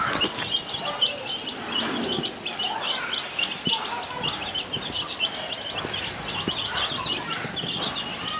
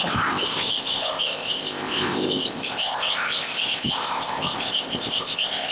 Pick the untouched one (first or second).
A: first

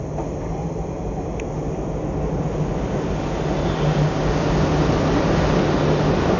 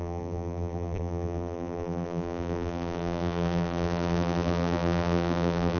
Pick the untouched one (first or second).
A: first